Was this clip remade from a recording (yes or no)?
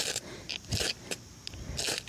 no